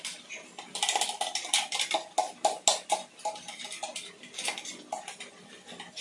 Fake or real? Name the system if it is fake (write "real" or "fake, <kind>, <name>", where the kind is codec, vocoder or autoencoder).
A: real